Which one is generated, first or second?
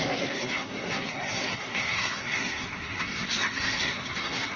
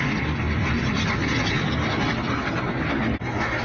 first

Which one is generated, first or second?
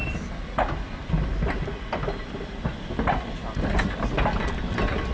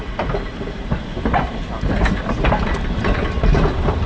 second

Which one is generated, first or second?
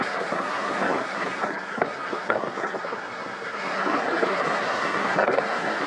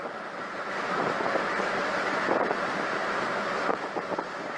first